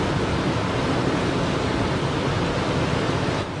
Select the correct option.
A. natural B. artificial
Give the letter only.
A